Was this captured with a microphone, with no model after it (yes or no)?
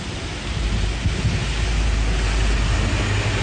yes